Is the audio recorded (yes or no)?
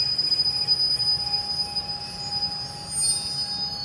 yes